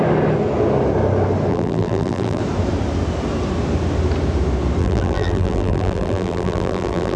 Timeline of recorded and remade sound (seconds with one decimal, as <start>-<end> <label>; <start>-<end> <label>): 0.0-1.5 recorded; 1.5-2.4 remade; 2.4-4.8 recorded; 4.8-7.2 remade